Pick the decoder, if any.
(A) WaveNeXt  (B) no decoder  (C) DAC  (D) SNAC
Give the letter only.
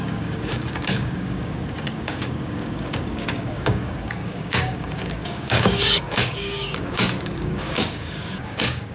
C